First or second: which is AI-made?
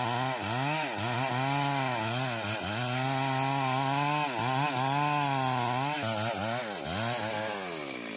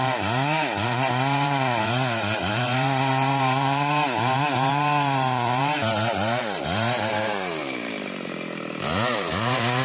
second